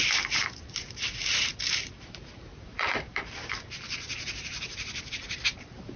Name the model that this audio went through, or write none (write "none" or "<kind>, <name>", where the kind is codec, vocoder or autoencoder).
vocoder, BigVGAN v2